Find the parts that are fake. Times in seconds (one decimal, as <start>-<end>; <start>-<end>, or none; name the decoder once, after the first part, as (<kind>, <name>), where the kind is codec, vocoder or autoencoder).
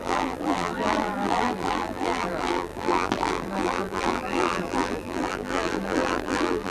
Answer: 0.0-6.7 (vocoder, BigVGAN v2)